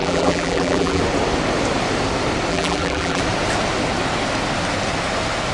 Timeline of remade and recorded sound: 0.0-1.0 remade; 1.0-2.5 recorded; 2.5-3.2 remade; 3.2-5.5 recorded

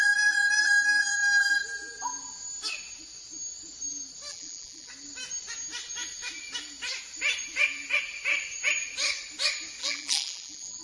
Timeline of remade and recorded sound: 0.0-4.3 recorded; 4.3-4.9 remade; 4.9-9.8 recorded; 9.8-10.8 remade

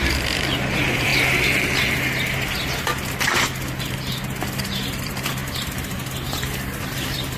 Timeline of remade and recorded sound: 0.0-1.1 remade; 1.1-5.0 recorded; 5.0-7.4 remade

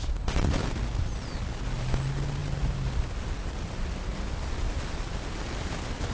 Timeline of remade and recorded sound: 0.0-6.1 recorded